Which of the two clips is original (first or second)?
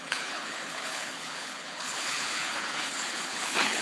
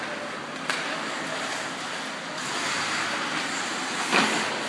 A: second